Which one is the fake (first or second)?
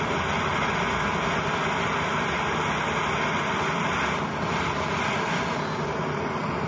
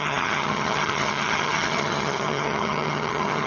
second